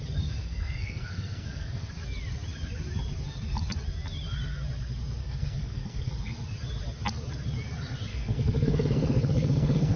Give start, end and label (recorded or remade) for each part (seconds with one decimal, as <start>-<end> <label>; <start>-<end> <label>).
0.0-0.4 recorded; 0.4-1.9 remade; 1.9-5.2 recorded; 5.2-6.1 remade; 6.1-8.1 recorded; 8.1-10.0 remade